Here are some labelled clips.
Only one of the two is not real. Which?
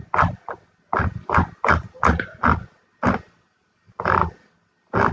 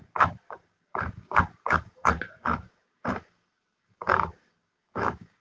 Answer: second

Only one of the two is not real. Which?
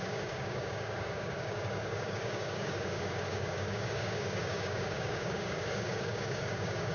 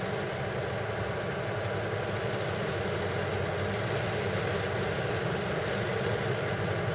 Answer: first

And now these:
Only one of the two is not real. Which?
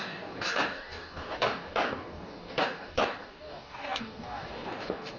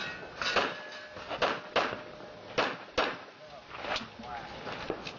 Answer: first